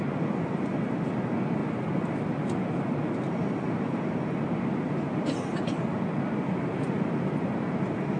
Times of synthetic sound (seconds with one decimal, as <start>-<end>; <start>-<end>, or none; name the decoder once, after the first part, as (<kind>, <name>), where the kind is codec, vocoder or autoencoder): none